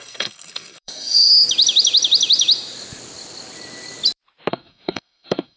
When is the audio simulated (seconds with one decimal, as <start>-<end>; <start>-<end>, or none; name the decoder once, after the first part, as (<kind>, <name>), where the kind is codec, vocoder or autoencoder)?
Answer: 0.0-1.3 (codec, SNAC); 4.5-5.6